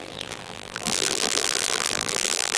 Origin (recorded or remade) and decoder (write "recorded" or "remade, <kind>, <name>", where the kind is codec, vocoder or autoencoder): remade, vocoder, BigVGAN v2